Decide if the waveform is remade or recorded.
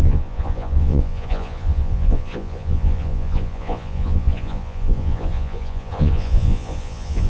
remade